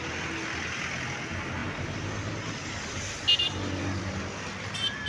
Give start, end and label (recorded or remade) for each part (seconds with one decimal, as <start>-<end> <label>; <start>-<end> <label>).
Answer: 0.0-5.1 recorded